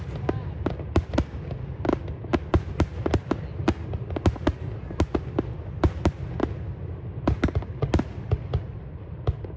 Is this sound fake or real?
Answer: real